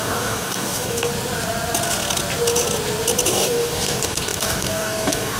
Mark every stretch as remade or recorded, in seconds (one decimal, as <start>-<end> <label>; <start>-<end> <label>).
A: 0.0-1.1 remade; 1.1-3.3 recorded; 3.3-5.4 remade